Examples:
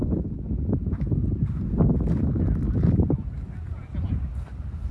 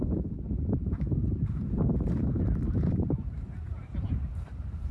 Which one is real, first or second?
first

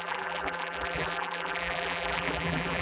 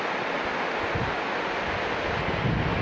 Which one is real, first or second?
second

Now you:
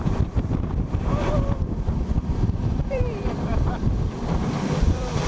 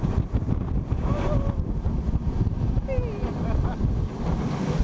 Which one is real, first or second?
second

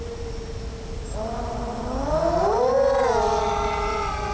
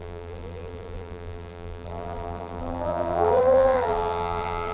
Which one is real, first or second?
first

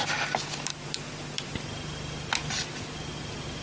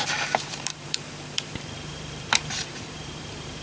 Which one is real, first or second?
first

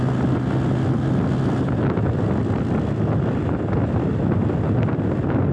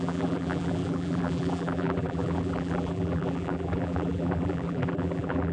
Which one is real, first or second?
first